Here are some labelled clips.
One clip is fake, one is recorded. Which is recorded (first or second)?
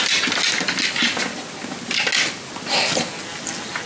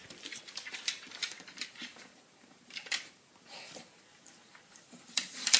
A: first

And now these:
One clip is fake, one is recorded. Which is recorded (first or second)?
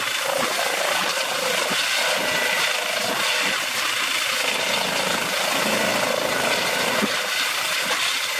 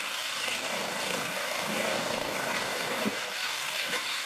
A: first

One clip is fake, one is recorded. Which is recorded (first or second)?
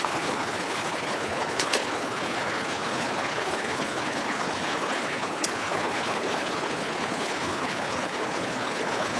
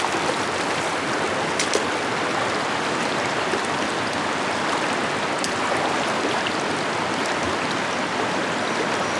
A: second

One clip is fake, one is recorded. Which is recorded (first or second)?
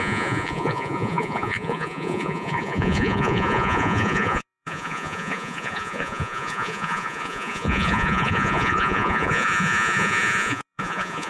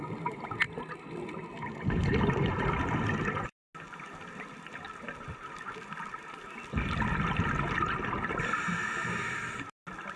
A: second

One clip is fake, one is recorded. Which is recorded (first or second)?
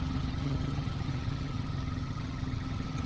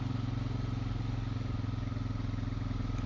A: second